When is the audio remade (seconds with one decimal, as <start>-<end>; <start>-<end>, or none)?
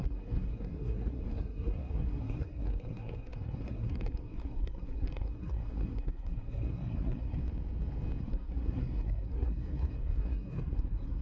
0.0-7.4; 8.2-11.2